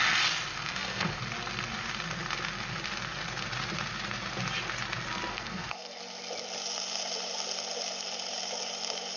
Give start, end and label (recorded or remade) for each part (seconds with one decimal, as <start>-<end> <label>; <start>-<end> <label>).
0.0-0.5 recorded; 0.5-1.2 remade; 1.2-5.3 recorded; 5.3-6.0 remade; 6.0-9.2 recorded